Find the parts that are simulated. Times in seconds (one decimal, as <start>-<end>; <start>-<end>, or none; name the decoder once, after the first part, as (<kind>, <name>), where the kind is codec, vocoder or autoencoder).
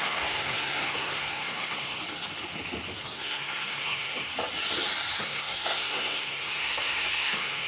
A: 0.0-2.0 (codec, SNAC); 3.0-4.3; 5.2-7.7